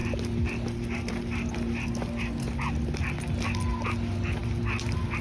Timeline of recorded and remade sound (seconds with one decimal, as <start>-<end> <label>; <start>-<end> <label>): 0.0-5.2 recorded

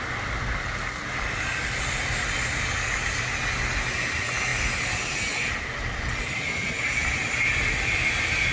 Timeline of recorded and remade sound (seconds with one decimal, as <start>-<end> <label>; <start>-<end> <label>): 0.0-4.5 recorded; 4.5-5.2 remade; 5.2-7.0 recorded; 7.0-8.5 remade

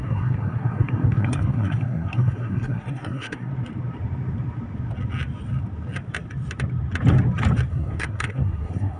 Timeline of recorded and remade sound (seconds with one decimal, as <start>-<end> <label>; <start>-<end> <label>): 0.0-3.5 remade; 3.5-7.7 recorded; 7.7-9.0 remade

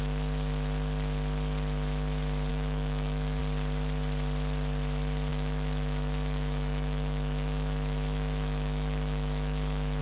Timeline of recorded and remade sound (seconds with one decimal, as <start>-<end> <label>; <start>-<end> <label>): 0.0-2.5 recorded; 2.5-3.4 remade; 3.4-5.3 recorded; 5.3-10.0 remade

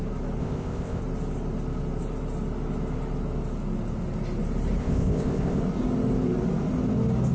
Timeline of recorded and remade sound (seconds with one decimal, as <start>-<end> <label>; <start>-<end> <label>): 0.0-0.4 recorded; 0.4-1.0 remade; 1.0-4.8 recorded; 4.8-5.6 remade; 5.6-7.3 recorded